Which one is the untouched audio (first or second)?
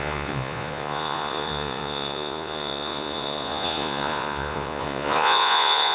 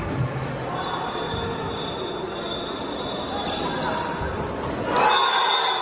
second